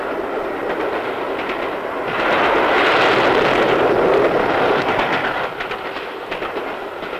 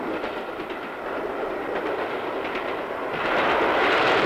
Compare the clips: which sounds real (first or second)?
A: first